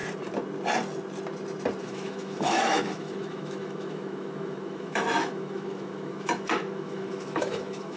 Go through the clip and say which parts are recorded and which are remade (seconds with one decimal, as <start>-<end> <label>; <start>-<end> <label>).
0.0-1.8 recorded; 1.8-8.0 remade